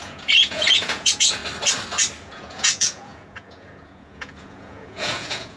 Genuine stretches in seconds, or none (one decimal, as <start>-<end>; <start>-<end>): 1.4-2.2